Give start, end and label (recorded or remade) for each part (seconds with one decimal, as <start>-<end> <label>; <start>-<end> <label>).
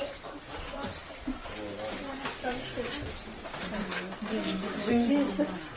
0.0-3.8 recorded; 3.8-5.1 remade; 5.1-5.8 recorded